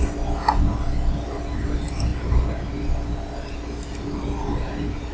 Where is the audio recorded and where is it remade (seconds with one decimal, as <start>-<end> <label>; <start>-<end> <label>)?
0.0-5.1 recorded